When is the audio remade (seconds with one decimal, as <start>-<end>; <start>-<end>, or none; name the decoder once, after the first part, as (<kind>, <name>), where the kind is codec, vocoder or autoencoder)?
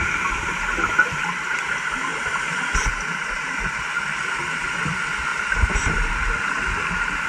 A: 2.1-3.8 (vocoder, BigVGAN v2); 5.3-6.1